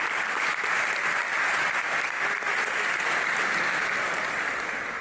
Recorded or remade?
recorded